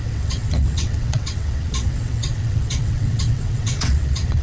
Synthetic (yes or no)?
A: yes